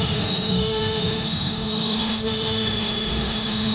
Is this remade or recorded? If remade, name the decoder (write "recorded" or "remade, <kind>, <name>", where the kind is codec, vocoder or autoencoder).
remade, autoencoder, DAC-VAE